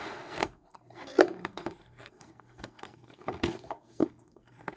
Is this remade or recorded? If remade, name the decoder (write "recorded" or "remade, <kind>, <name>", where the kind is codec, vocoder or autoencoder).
remade, codec, SNAC